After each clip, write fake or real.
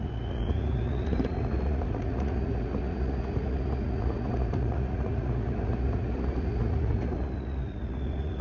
fake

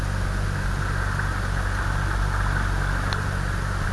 real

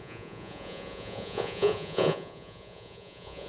fake